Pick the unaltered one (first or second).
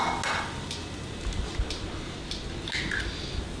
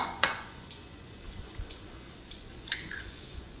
first